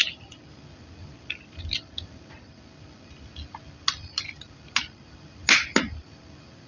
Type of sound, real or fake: real